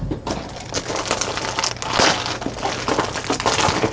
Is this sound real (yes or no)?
yes